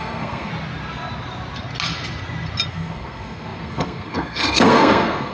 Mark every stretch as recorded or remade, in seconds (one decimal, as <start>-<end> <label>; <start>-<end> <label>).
0.0-0.5 remade; 0.5-2.7 recorded; 2.7-5.3 remade